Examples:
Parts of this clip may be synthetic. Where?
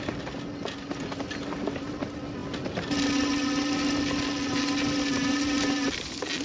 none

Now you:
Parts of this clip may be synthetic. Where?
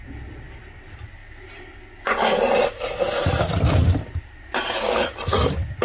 none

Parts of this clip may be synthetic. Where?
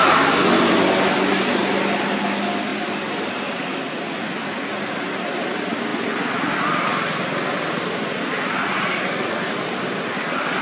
none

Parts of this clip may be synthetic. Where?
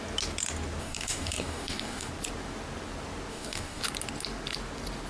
0.8-2.1; 3.3-3.8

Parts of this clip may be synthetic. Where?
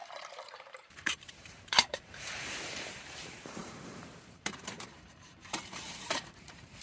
0.0-6.8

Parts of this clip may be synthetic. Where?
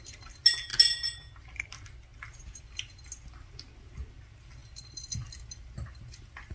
none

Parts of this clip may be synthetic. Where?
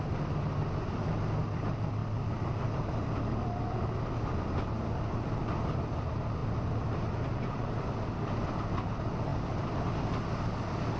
6.4-7.9; 9.3-9.9